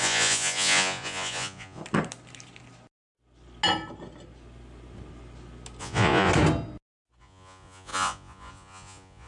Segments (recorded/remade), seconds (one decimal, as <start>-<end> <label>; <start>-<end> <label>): 0.0-1.8 remade; 1.8-5.8 recorded; 5.8-6.3 remade; 6.3-7.2 recorded; 7.2-9.3 remade

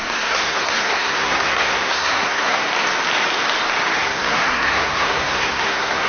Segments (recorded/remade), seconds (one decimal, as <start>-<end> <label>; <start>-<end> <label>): 0.0-2.7 remade; 2.7-4.0 recorded; 4.0-6.1 remade